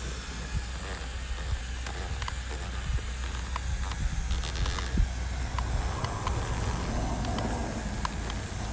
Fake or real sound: real